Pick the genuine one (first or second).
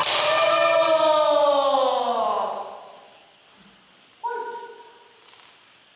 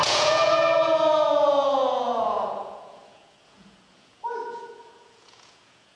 first